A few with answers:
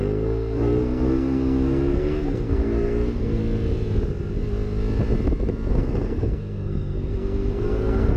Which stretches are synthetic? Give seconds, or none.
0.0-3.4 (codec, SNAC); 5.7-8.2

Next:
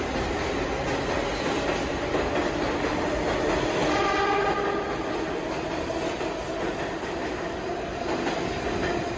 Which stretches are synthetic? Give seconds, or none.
none

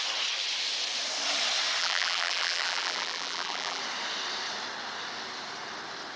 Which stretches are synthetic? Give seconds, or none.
1.8-3.8 (vocoder, BigVGAN v2)